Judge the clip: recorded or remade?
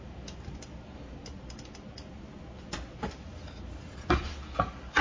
recorded